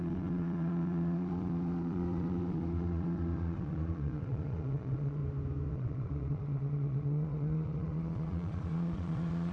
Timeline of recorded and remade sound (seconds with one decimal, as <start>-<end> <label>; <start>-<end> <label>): 0.0-5.2 remade; 5.2-5.7 recorded; 5.7-9.5 remade